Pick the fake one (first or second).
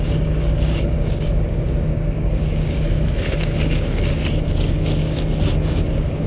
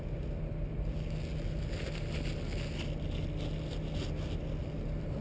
first